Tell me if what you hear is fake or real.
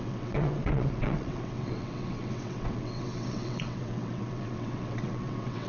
fake